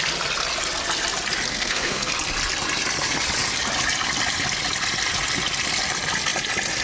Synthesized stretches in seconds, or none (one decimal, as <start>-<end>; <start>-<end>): 1.5-2.1